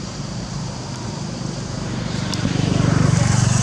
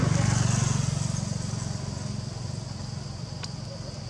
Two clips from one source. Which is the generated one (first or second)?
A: first